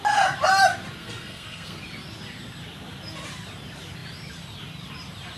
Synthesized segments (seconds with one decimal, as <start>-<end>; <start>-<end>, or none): 1.0-1.8